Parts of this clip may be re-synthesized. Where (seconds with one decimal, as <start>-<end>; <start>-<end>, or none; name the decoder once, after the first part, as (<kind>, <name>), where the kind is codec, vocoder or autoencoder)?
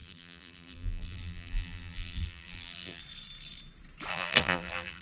0.0-3.0 (vocoder, BigVGAN v2); 4.1-5.0